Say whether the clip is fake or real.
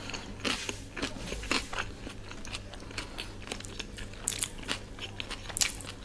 real